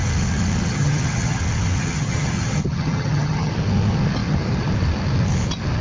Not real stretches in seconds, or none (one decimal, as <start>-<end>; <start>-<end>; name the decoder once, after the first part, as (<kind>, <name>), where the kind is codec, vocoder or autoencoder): 0.6-1.4 (vocoder, HiFi-GAN); 1.8-3.5